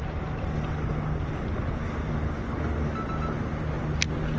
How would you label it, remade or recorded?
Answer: recorded